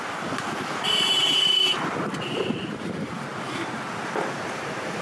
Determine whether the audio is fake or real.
fake